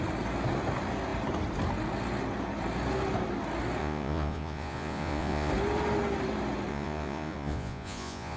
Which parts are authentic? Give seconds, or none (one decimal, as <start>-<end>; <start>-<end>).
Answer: 0.0-3.8; 5.5-6.7